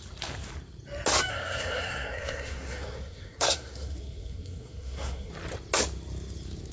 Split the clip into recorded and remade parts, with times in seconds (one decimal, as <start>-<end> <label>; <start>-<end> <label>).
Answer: 0.0-1.3 recorded; 1.3-5.3 remade; 5.3-6.7 recorded